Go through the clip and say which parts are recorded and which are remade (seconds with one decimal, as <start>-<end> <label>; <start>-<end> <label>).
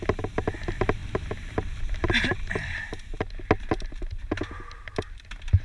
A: 0.0-5.6 recorded